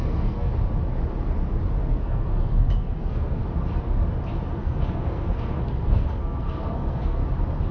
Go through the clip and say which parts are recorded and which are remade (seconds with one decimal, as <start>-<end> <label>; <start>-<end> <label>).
0.0-0.5 remade; 0.5-1.8 recorded; 1.8-3.4 remade; 3.4-4.6 recorded; 4.6-7.2 remade; 7.2-7.7 recorded